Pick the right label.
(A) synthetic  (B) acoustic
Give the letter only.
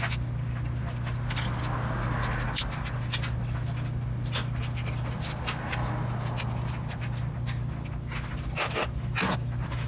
B